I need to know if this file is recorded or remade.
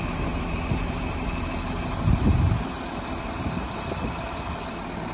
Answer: recorded